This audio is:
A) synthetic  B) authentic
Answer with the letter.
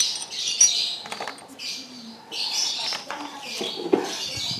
B